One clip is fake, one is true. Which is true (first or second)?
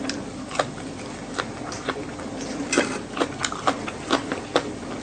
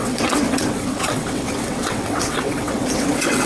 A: first